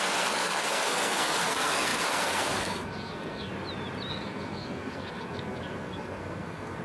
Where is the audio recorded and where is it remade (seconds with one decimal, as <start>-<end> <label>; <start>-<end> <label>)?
0.0-3.5 remade; 3.5-4.1 recorded; 4.1-6.8 remade

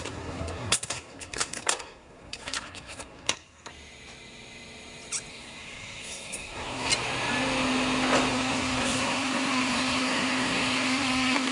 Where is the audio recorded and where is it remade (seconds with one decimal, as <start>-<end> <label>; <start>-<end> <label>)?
0.0-3.7 remade; 3.7-5.3 recorded; 5.3-6.9 remade; 6.9-8.3 recorded; 8.3-11.5 remade